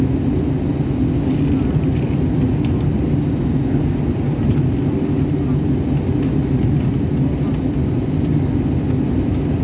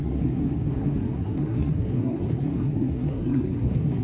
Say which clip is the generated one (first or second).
second